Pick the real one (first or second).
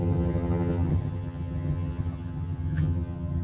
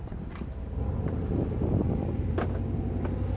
second